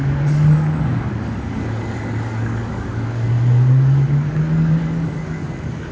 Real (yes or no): no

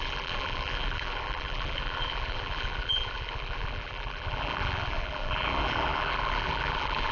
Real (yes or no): no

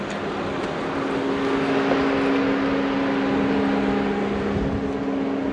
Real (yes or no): yes